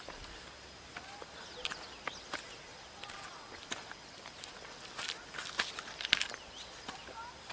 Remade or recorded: recorded